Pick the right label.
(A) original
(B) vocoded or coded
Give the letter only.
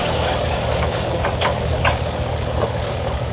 B